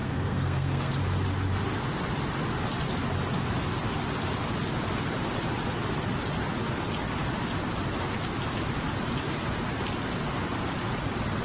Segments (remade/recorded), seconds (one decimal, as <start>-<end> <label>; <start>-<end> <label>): 0.0-0.9 remade; 0.9-11.4 recorded